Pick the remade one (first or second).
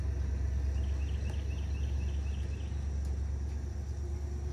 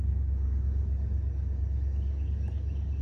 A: second